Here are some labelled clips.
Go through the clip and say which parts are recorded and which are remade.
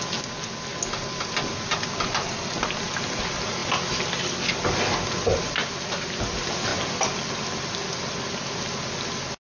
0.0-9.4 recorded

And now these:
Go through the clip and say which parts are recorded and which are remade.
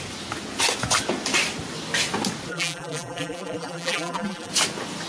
0.0-2.5 recorded; 2.5-4.5 remade; 4.5-5.1 recorded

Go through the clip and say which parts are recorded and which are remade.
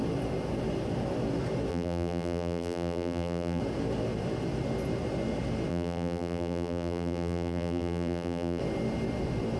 0.0-1.7 recorded; 1.7-3.6 remade; 3.6-5.7 recorded; 5.7-8.6 remade; 8.6-9.6 recorded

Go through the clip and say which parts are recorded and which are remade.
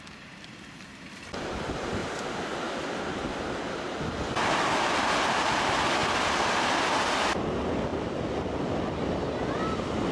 0.0-10.1 recorded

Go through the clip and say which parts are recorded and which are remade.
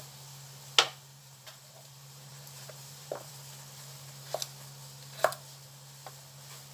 0.0-1.2 recorded; 1.2-3.3 remade; 3.3-6.7 recorded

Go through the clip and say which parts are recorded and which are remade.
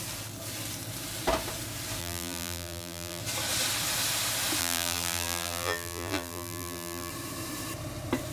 0.0-2.0 recorded; 2.0-3.2 remade; 3.2-4.6 recorded; 4.6-7.1 remade; 7.1-8.3 recorded